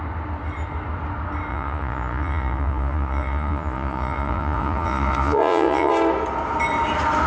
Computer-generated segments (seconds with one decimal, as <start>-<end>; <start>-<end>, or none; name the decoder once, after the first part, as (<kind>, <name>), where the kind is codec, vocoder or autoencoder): 1.5-5.9 (vocoder, Vocos)